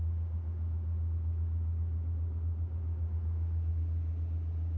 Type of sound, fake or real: real